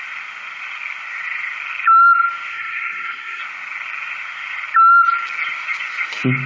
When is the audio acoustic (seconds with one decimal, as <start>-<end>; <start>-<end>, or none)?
0.0-2.5; 3.4-6.5